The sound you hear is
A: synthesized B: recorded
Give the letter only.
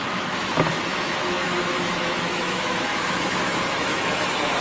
A